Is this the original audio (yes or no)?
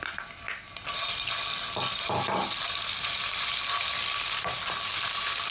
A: yes